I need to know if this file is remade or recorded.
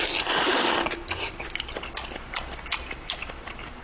recorded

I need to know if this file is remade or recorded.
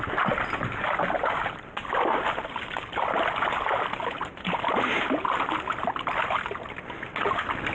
recorded